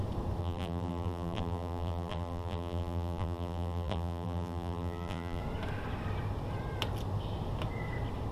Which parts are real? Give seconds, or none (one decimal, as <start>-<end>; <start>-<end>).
0.0-0.4; 5.4-8.3